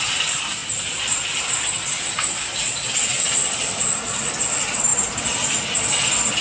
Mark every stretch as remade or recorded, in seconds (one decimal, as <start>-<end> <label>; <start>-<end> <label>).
0.0-0.6 recorded; 0.6-2.0 remade; 2.0-3.1 recorded; 3.1-3.8 remade; 3.8-4.9 recorded; 4.9-5.5 remade; 5.5-6.4 recorded